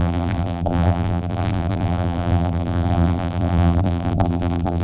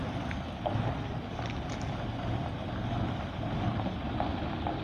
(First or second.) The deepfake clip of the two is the first